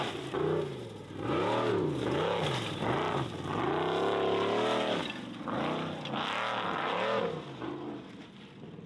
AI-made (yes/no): no